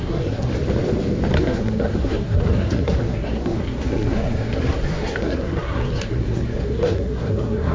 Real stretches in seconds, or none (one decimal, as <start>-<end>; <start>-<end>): 0.5-1.4